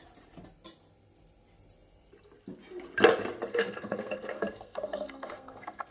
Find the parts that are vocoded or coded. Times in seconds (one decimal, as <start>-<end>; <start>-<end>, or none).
3.5-5.9